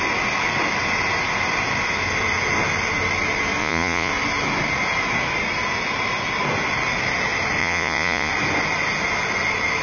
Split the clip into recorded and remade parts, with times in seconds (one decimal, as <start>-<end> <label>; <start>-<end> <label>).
0.0-3.6 recorded; 3.6-4.1 remade; 4.1-7.6 recorded; 7.6-8.3 remade; 8.3-9.8 recorded